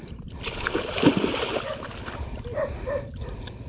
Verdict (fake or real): real